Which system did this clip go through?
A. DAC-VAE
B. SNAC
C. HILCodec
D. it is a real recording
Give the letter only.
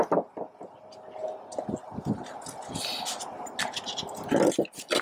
D